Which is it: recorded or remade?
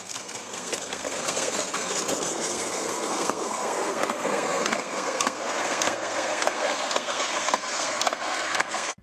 remade